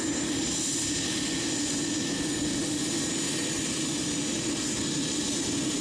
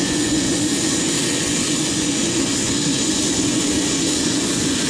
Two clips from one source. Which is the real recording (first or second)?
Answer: first